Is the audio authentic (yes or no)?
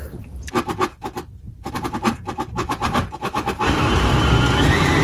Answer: no